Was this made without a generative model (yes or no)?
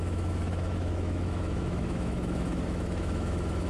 no